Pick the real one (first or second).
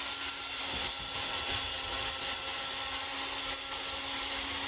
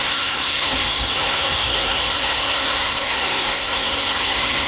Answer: first